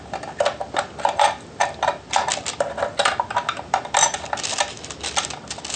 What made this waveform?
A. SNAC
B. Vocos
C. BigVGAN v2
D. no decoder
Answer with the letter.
D